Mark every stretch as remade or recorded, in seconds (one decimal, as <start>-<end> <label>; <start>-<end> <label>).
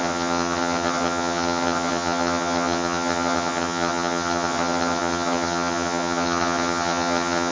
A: 0.0-7.5 remade